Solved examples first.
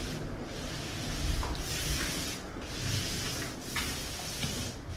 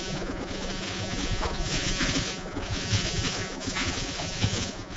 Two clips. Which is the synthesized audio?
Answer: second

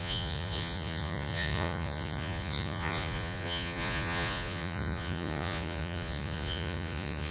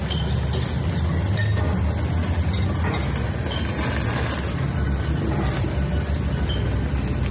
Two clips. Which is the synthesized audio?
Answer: first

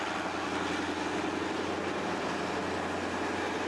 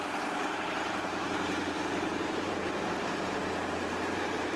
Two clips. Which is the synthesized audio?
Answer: second